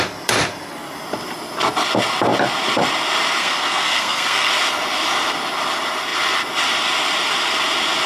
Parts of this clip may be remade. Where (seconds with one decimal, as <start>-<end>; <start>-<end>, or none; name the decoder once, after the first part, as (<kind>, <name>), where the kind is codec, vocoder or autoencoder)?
3.4-4.5 (codec, SNAC)